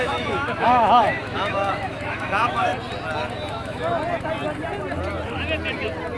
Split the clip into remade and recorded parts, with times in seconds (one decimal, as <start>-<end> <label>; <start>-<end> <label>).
0.0-2.7 remade; 2.7-3.5 recorded; 3.5-3.9 remade; 3.9-6.2 recorded